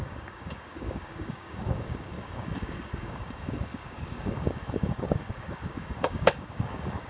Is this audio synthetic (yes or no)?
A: yes